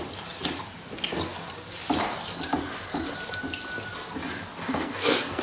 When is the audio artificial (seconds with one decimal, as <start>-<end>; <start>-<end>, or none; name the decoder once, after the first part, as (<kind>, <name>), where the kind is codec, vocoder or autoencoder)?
4.6-5.4 (codec, SNAC)